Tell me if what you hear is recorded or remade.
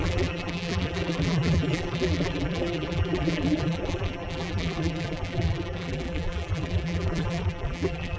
remade